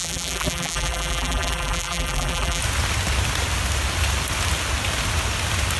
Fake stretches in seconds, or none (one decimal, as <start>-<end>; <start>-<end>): 0.0-2.6